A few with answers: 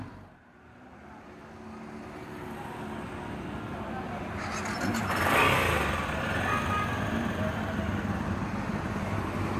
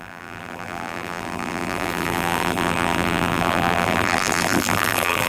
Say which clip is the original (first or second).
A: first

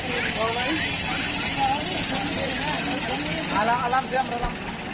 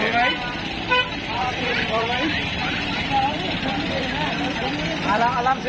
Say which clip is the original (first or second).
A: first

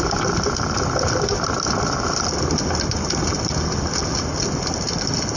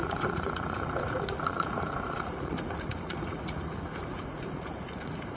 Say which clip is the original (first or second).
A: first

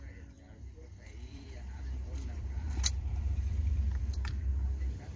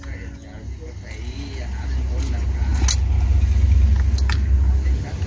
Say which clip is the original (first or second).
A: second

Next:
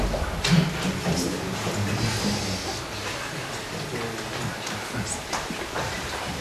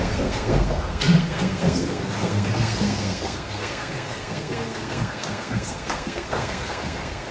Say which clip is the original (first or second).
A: first